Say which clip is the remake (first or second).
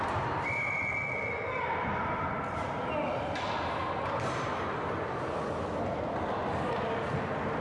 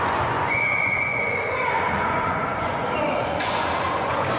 second